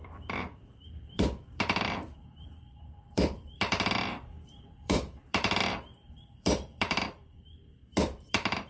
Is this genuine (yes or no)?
no